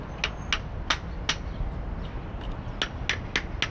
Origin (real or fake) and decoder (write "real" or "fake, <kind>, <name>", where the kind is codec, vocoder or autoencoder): real